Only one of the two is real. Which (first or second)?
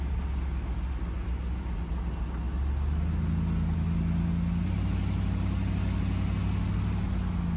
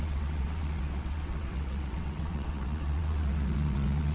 first